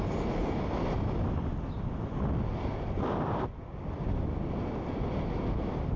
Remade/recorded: recorded